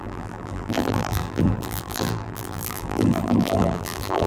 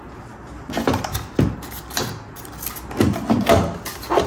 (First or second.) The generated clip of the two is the first